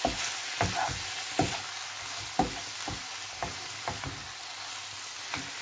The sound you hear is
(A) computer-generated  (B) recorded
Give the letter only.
B